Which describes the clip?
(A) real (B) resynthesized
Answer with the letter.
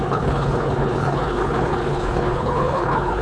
B